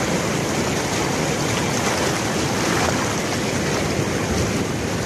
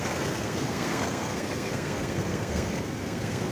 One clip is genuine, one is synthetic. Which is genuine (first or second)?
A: first